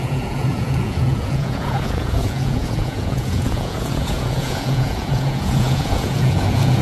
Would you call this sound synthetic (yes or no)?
yes